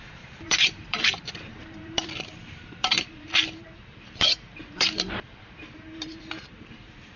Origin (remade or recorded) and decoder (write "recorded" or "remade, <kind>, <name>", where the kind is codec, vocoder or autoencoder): remade, vocoder, BigVGAN v2